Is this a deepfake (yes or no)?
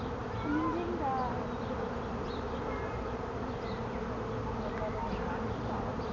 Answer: no